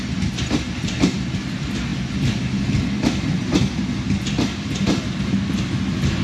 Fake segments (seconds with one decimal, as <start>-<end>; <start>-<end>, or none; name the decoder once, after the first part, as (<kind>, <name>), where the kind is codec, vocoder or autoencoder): none